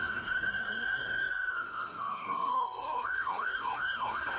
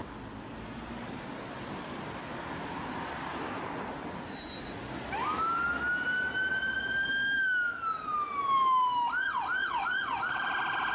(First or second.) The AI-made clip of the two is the first